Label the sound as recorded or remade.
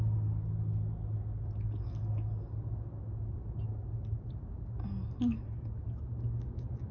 recorded